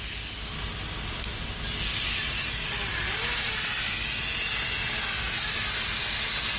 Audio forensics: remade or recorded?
recorded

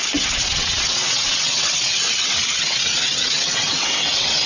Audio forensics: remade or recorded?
remade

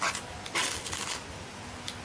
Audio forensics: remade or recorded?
recorded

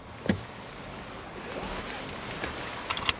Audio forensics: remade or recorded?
recorded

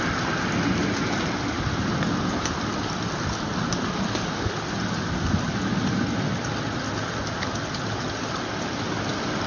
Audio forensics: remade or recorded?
recorded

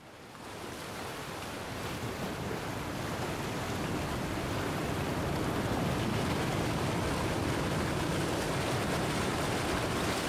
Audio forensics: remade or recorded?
recorded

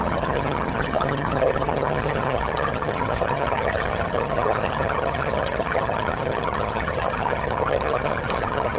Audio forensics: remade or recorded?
remade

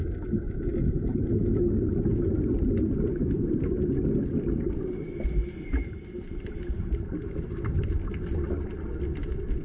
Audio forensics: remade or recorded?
recorded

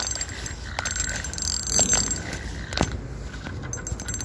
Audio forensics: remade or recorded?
recorded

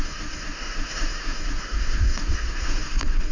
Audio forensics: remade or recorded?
remade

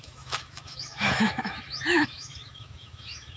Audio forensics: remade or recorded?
remade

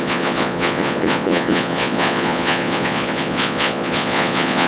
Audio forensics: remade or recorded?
remade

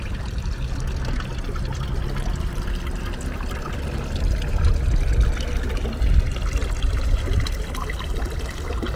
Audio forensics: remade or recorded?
recorded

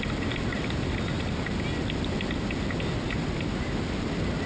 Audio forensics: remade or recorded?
recorded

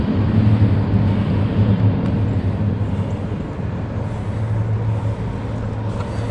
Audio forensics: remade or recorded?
recorded